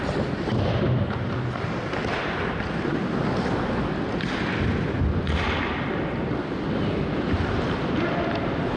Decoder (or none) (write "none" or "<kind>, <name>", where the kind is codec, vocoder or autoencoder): none